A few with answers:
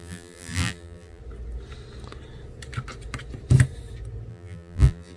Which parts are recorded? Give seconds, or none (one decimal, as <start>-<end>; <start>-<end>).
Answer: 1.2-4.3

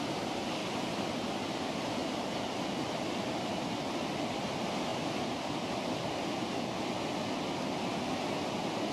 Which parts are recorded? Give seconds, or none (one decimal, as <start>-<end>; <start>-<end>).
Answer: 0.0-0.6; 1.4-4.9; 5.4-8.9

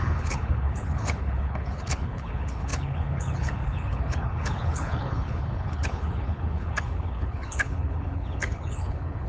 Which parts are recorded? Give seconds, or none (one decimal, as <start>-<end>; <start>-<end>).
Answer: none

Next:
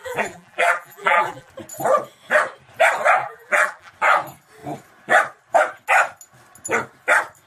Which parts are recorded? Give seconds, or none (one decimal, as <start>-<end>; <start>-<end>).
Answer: 1.5-3.2; 3.9-7.5

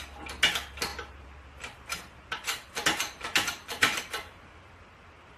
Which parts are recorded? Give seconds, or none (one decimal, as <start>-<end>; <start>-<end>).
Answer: none

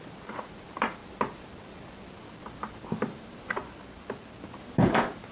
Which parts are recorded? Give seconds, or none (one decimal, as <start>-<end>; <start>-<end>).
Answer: 1.0-2.8; 3.6-4.5

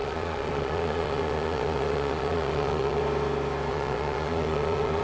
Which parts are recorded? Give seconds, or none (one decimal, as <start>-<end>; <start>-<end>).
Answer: 3.0-3.7

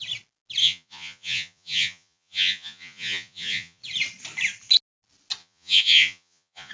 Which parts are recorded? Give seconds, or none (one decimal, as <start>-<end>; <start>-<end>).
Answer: 0.0-0.6; 3.8-5.4